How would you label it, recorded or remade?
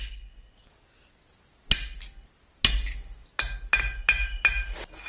recorded